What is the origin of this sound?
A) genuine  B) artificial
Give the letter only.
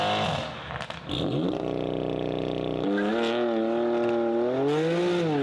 A